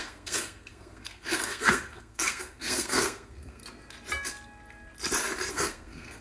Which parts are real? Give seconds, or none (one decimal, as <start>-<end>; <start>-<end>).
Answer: 3.6-5.5